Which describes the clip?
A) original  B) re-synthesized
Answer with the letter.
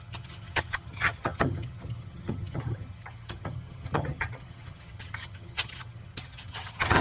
B